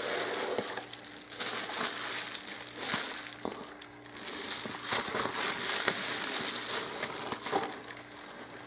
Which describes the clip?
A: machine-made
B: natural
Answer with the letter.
B